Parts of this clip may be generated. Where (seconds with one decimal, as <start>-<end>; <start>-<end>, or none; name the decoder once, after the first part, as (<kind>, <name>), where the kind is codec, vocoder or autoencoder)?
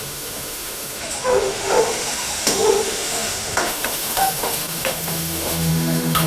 0.0-6.3 (autoencoder, DAC-VAE)